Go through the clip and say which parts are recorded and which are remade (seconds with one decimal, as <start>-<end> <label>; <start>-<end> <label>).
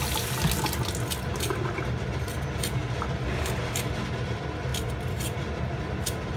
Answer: 0.0-2.8 recorded; 2.8-3.6 remade; 3.6-6.4 recorded